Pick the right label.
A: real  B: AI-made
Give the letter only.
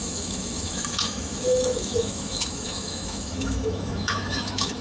B